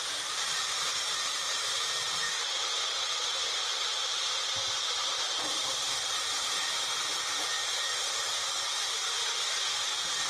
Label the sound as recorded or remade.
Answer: remade